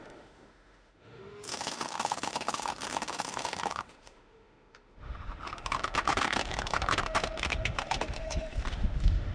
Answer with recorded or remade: remade